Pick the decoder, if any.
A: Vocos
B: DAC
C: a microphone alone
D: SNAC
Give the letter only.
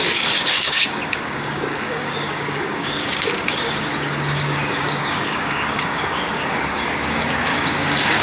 B